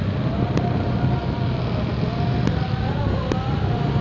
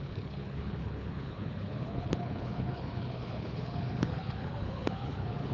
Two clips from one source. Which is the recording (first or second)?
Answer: first